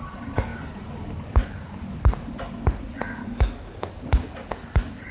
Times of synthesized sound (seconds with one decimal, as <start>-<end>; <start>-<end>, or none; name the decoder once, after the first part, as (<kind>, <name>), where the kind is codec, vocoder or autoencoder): 3.2-3.9 (codec, DAC)